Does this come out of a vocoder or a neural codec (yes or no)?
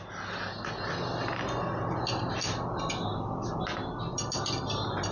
no